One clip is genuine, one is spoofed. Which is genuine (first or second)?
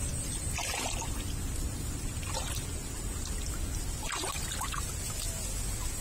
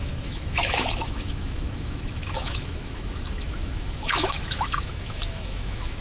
first